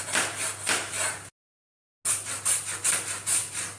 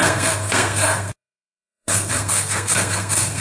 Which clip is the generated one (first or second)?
second